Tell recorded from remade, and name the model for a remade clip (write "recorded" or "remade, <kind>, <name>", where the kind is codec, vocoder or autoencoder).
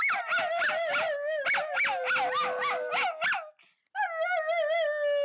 recorded